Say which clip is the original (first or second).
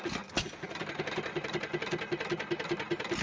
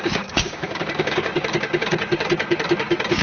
first